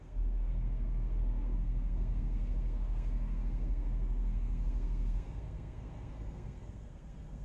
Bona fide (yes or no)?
no